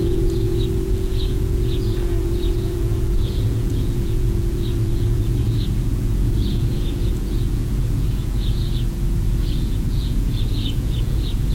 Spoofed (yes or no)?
yes